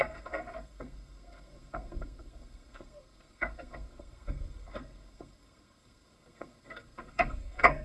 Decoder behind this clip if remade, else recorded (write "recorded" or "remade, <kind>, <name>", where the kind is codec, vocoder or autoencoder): remade, codec, SNAC